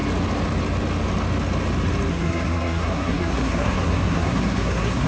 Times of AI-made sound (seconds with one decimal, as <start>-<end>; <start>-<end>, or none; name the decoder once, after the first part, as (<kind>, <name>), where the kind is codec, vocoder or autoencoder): 2.1-5.1 (codec, SNAC)